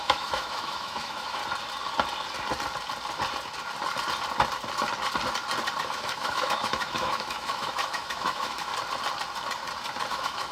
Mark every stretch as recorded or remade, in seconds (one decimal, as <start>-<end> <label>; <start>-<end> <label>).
0.0-1.4 remade; 1.4-5.8 recorded; 5.8-8.7 remade; 8.7-10.1 recorded; 10.1-10.5 remade